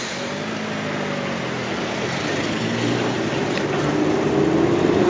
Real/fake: real